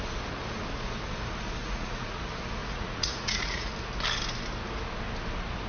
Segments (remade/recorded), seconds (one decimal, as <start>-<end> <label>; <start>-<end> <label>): 0.0-1.6 recorded; 1.6-2.2 remade; 2.2-2.6 recorded; 2.6-3.7 remade; 3.7-5.7 recorded